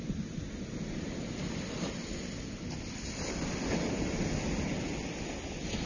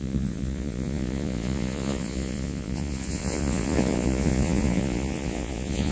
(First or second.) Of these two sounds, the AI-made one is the second